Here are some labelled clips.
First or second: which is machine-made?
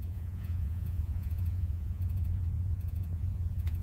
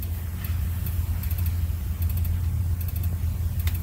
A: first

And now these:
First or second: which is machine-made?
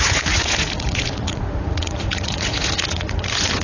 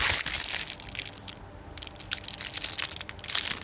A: first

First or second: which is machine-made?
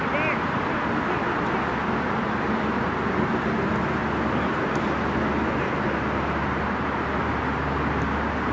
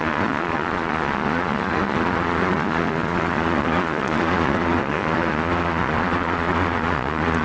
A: second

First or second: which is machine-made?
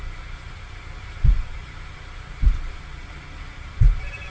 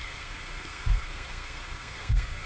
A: second